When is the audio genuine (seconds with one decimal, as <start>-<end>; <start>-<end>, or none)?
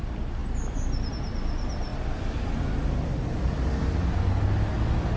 0.0-5.2